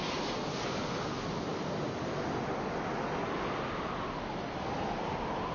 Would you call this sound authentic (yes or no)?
yes